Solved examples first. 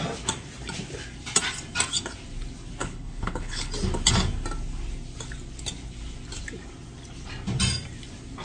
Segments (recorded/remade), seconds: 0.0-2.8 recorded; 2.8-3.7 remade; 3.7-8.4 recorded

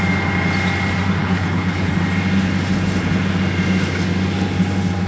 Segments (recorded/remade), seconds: 0.0-1.2 recorded; 1.2-1.9 remade; 1.9-5.1 recorded